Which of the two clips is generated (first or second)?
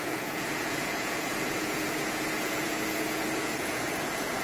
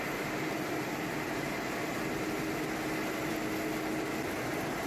first